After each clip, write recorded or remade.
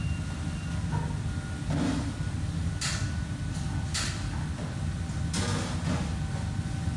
recorded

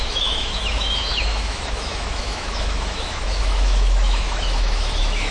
remade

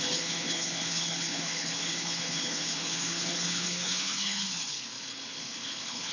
remade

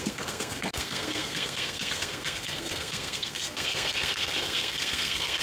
remade